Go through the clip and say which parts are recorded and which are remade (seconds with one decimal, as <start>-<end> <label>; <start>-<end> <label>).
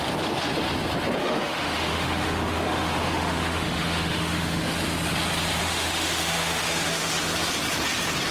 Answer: 0.0-1.2 recorded; 1.2-4.7 remade; 4.7-5.6 recorded; 5.6-7.1 remade; 7.1-8.3 recorded